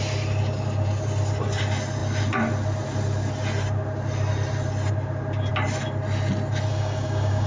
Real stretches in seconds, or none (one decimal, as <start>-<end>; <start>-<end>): 0.0-6.7